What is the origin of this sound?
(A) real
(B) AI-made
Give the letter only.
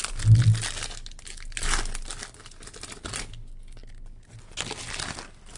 A